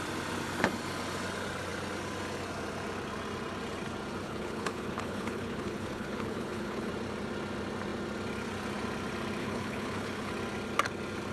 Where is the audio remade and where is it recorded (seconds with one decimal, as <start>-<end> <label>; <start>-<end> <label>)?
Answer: 0.0-4.2 recorded; 4.2-6.9 remade; 6.9-9.4 recorded; 9.4-10.3 remade; 10.3-11.3 recorded